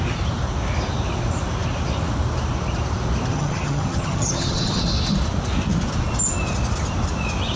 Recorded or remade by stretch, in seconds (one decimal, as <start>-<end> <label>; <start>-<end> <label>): 0.0-3.3 recorded; 3.3-4.8 remade; 4.8-7.6 recorded